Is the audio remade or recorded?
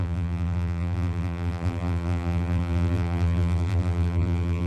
remade